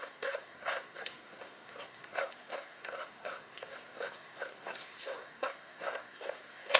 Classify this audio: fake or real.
fake